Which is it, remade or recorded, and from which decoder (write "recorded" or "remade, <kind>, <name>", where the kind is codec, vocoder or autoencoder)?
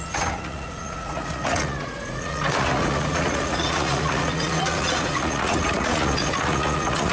remade, vocoder, Vocos